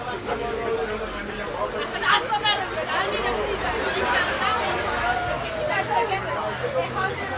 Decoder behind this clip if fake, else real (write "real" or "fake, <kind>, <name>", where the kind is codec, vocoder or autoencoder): real